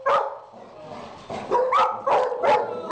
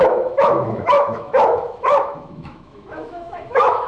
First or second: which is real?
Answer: first